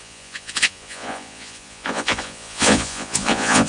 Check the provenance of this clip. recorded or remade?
remade